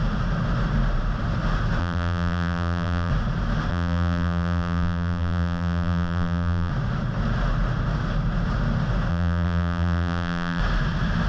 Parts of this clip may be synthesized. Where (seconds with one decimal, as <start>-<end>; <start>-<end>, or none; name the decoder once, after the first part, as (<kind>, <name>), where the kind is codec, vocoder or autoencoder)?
1.8-3.1 (vocoder, BigVGAN v2); 3.7-6.7; 9.1-10.6